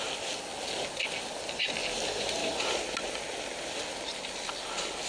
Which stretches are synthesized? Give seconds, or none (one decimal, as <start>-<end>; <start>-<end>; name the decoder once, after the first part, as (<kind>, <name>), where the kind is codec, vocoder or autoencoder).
none